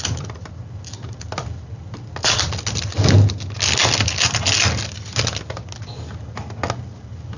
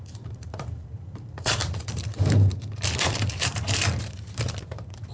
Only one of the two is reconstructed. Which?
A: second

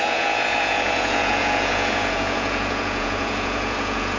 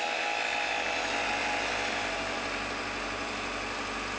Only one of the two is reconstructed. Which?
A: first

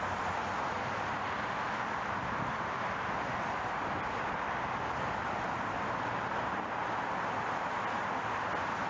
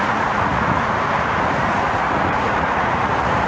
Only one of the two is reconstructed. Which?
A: second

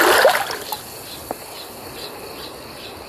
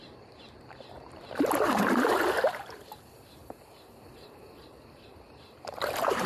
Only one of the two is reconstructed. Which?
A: second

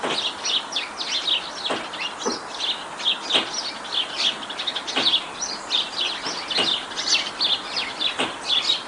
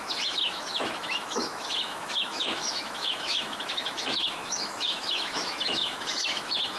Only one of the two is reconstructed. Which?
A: second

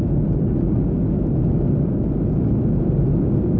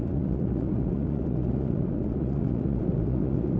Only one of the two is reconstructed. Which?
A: second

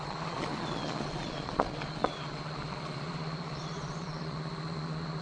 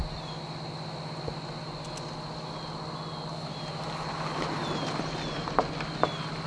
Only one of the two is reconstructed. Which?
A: first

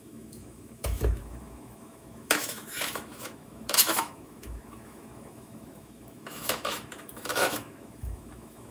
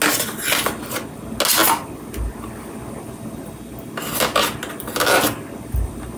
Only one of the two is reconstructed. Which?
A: first